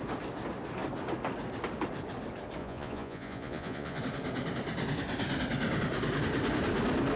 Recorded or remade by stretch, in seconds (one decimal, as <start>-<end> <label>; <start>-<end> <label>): 0.0-2.6 recorded; 2.6-4.0 remade; 4.0-7.2 recorded